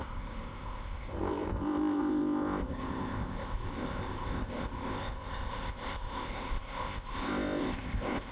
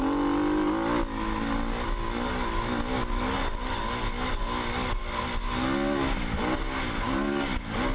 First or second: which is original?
second